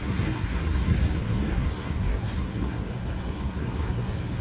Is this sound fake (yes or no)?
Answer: yes